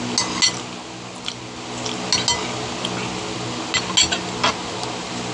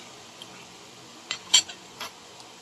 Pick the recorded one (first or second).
first